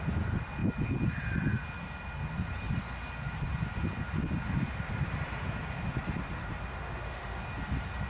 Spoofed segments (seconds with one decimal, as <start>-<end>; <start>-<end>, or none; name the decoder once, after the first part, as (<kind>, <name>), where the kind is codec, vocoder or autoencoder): 6.7-7.4 (autoencoder, DAC-VAE)